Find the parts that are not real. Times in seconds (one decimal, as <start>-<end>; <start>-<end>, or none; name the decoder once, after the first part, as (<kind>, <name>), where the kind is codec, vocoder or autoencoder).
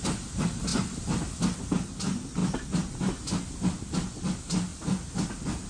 none